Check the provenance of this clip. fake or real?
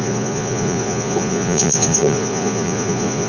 fake